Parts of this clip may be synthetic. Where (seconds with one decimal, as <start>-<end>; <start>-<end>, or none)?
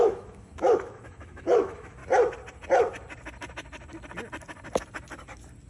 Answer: 0.0-2.0